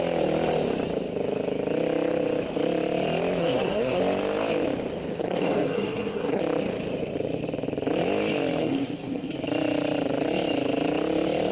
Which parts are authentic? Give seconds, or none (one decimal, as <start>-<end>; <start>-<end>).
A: 0.0-3.4; 4.0-5.2; 6.4-8.6; 9.3-11.5